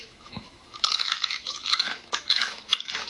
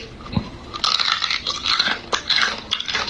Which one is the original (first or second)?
second